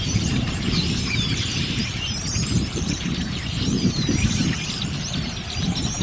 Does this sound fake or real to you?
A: fake